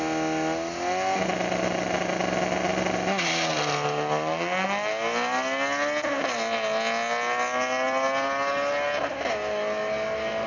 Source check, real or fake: real